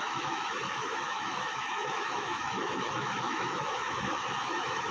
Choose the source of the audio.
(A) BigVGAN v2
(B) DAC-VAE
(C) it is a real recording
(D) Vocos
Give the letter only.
B